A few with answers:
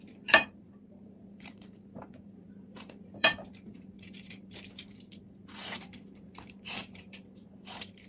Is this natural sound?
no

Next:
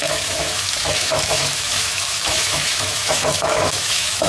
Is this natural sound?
no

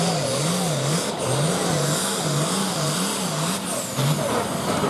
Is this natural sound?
yes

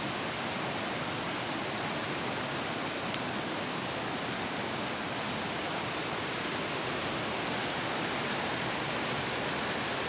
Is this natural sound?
yes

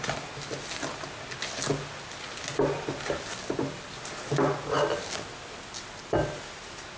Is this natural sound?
yes